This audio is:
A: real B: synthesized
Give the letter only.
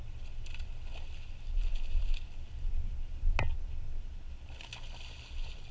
A